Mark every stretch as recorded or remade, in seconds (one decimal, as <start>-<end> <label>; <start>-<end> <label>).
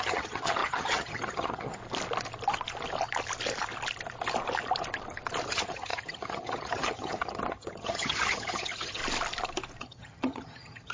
0.0-1.8 remade; 1.8-5.5 recorded; 5.5-9.0 remade; 9.0-9.8 recorded; 9.8-10.9 remade